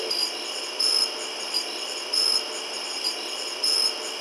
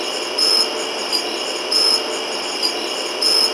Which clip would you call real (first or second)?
second